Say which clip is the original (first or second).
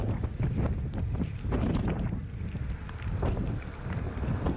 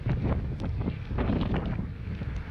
first